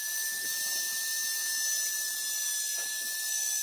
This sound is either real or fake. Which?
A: real